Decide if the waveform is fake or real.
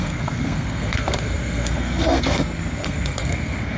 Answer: fake